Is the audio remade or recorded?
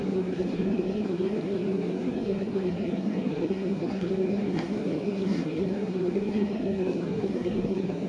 remade